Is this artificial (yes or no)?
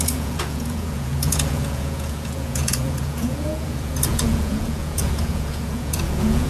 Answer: yes